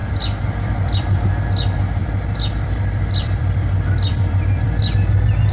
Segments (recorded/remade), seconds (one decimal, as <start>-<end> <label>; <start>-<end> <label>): 0.0-1.4 remade; 1.4-2.0 recorded; 2.0-5.5 remade